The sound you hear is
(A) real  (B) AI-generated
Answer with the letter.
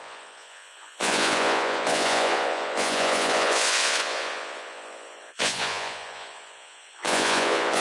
B